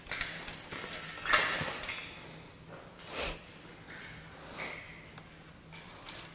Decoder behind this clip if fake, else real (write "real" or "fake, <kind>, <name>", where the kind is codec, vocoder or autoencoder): real